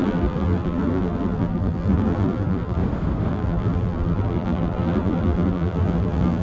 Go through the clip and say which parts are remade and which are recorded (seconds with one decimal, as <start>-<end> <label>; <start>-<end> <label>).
0.0-2.8 remade; 2.8-3.3 recorded; 3.3-6.4 remade